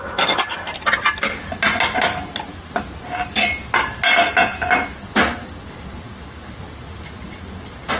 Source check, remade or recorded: recorded